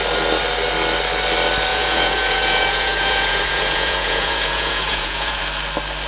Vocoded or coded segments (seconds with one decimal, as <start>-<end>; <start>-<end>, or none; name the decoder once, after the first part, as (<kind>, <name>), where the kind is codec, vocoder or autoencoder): 1.7-5.4 (vocoder, Vocos)